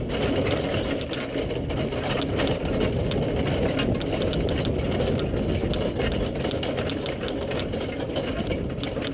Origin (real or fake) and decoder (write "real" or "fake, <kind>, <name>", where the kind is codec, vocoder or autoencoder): real